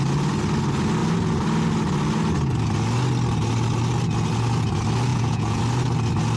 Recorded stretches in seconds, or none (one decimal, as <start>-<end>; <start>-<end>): 0.0-5.1; 5.6-6.4